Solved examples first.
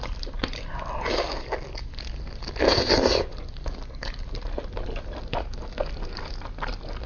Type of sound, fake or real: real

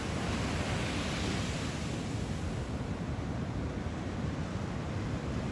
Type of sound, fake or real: real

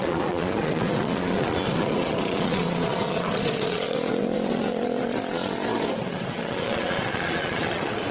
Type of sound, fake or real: fake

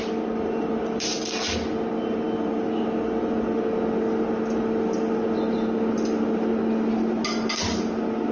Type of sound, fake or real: real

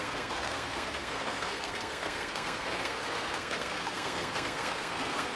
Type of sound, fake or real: fake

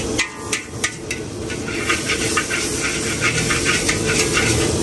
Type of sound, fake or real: real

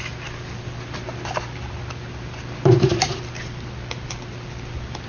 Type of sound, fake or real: real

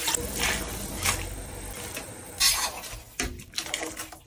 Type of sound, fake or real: real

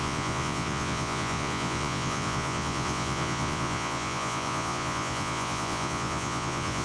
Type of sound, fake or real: fake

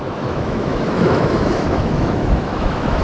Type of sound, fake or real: fake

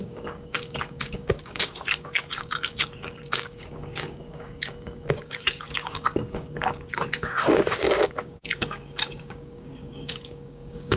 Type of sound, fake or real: fake